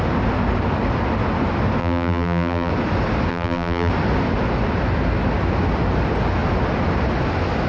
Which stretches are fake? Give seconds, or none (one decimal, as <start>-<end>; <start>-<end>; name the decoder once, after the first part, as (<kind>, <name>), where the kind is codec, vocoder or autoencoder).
1.8-2.7 (vocoder, BigVGAN v2); 3.3-3.9

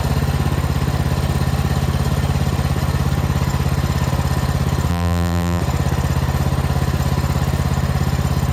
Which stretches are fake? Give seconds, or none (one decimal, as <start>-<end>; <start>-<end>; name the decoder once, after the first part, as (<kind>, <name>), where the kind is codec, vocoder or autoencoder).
4.9-5.6 (vocoder, BigVGAN v2)

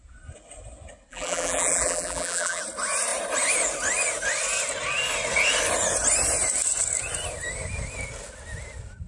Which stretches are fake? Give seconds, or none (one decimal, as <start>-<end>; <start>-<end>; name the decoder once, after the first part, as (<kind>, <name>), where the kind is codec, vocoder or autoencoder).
1.1-2.6 (vocoder, BigVGAN v2)